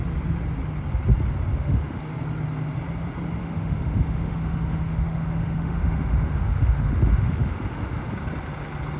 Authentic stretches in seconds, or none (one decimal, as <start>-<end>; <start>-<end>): 0.0-1.5; 2.0-3.4; 8.1-9.0